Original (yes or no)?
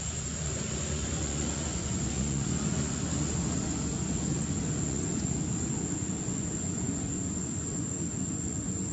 no